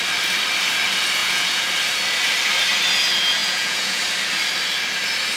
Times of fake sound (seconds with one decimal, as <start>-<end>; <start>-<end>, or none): 1.2-1.7; 3.4-4.0